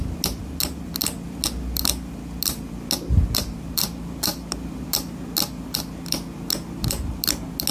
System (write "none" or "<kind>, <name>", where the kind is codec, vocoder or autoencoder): none